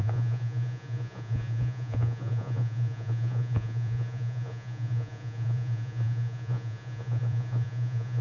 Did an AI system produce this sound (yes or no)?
yes